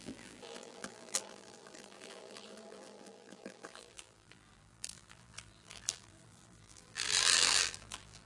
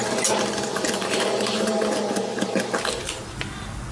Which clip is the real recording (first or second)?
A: second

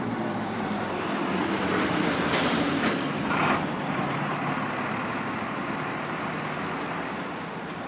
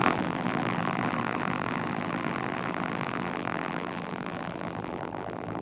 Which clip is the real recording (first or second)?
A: first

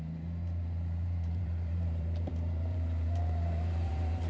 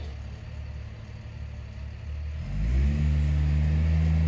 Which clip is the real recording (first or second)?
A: second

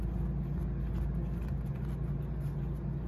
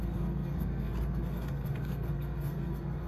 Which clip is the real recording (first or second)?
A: first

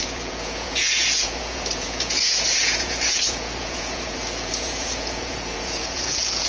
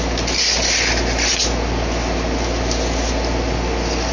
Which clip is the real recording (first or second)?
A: second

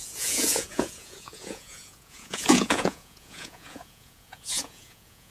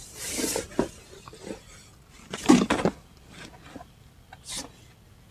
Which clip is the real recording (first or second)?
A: second